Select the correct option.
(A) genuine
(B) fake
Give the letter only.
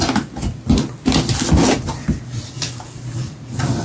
A